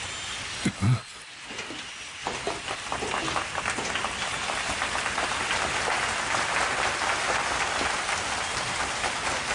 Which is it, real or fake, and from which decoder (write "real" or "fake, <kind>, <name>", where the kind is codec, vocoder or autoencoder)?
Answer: real